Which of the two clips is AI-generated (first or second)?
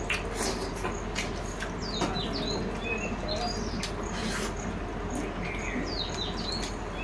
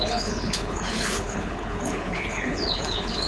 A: second